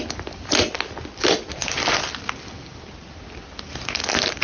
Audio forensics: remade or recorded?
recorded